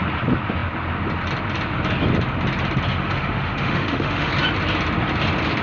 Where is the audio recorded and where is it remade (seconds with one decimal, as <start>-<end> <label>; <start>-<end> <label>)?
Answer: 0.0-2.9 recorded; 2.9-4.3 remade; 4.3-5.6 recorded